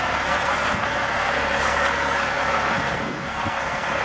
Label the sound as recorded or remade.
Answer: remade